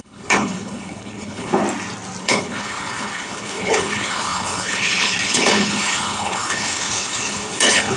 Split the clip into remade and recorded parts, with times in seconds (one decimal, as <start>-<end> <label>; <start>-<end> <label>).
0.0-1.6 remade; 1.6-2.2 recorded; 2.2-8.0 remade